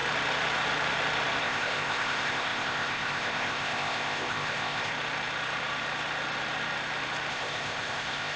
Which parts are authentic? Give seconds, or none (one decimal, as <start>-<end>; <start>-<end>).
0.0-1.4; 4.9-7.3